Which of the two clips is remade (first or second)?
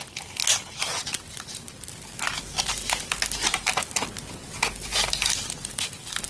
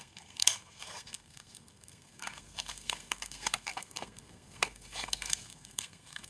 second